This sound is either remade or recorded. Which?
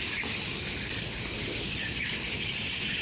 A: recorded